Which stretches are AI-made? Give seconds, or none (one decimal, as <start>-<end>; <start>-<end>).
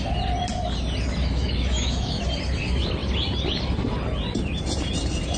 1.2-2.2